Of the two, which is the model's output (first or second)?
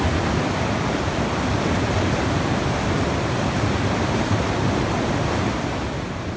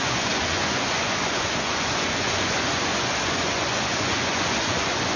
second